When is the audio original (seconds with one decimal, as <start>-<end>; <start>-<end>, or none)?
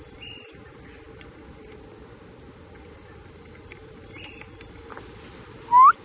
0.0-6.0